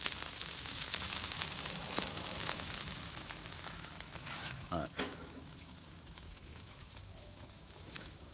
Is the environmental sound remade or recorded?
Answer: remade